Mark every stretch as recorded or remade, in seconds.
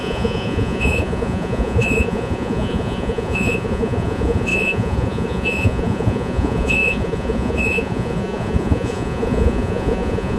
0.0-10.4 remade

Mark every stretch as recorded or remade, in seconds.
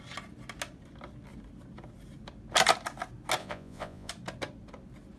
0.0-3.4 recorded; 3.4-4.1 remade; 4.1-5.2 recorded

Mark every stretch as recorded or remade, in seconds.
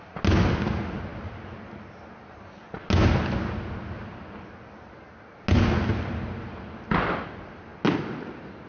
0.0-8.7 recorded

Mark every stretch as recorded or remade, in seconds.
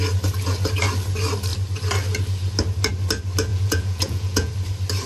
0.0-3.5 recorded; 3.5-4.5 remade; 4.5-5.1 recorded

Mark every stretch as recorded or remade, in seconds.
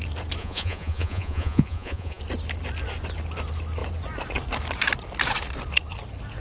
0.0-0.4 recorded; 0.4-2.2 remade; 2.2-6.4 recorded